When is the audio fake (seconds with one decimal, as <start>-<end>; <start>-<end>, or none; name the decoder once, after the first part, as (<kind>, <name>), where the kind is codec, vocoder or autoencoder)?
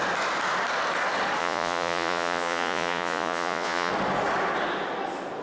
1.4-3.9 (vocoder, Vocos)